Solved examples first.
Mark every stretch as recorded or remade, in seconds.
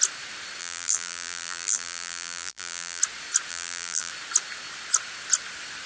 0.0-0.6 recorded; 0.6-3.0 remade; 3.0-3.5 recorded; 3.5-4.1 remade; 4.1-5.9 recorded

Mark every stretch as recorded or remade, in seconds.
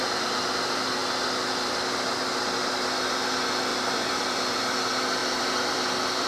0.0-3.7 recorded; 3.7-4.6 remade; 4.6-5.2 recorded; 5.2-6.3 remade